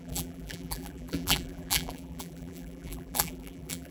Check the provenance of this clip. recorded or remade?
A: remade